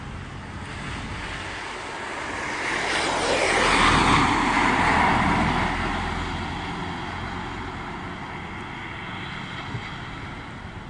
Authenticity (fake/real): real